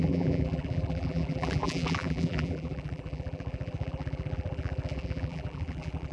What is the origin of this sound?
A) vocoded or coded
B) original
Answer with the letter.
A